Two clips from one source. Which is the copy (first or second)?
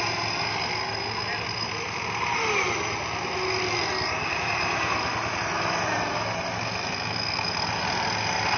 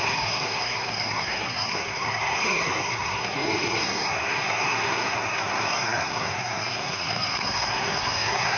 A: second